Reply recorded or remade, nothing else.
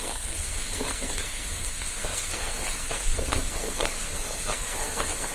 remade